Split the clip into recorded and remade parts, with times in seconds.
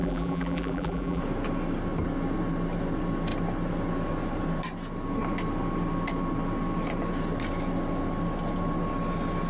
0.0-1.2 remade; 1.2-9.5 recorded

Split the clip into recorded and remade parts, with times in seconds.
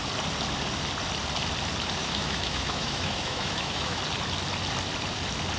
0.0-2.0 recorded; 2.0-4.0 remade; 4.0-5.6 recorded